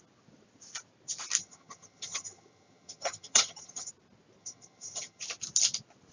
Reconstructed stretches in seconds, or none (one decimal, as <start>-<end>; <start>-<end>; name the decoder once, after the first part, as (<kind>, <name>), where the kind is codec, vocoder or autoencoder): 1.4-3.9 (vocoder, HiFi-GAN); 4.4-5.2